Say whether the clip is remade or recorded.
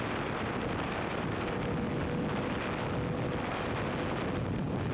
recorded